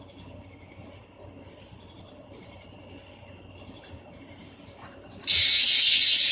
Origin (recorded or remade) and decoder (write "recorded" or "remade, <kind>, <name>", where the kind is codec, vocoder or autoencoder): recorded